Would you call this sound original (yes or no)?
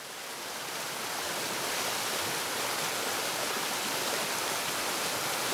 yes